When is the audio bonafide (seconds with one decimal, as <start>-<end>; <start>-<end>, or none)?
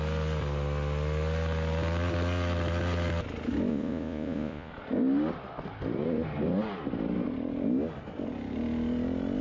0.0-3.7; 4.7-9.4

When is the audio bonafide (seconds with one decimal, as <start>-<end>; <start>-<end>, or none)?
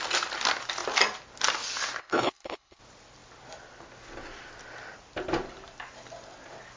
0.0-2.0; 2.8-6.8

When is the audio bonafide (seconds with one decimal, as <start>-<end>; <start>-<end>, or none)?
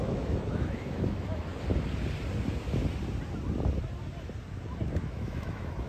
1.5-5.0